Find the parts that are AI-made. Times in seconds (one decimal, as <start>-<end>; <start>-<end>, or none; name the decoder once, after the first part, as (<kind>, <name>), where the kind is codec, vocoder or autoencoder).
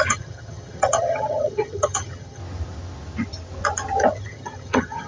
0.0-2.4 (vocoder, HiFi-GAN); 4.1-5.1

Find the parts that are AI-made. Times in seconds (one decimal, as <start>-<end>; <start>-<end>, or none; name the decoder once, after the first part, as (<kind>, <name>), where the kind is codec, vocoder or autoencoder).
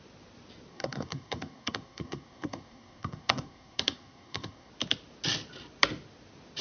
0.7-4.7 (codec, SNAC)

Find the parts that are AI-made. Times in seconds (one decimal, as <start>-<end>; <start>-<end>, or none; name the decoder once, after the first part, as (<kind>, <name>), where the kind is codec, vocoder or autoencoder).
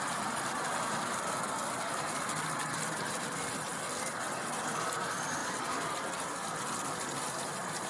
0.0-3.7 (vocoder, BigVGAN v2); 4.6-5.4; 5.9-7.9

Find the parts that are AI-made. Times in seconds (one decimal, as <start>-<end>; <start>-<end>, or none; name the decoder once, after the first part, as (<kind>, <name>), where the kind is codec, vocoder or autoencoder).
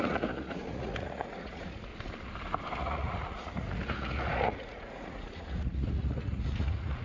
0.0-1.9 (vocoder, Vocos); 2.8-7.0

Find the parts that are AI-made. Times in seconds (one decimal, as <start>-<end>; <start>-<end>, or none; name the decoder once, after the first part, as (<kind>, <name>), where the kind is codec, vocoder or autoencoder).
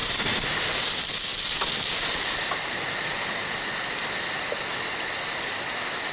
none